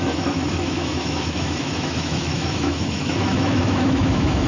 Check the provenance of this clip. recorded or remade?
remade